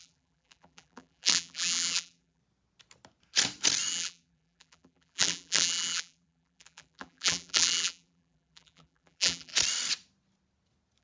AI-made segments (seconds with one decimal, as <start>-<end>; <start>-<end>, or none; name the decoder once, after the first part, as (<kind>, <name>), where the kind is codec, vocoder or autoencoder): 0.0-2.4 (vocoder, BigVGAN v2); 3.9-9.5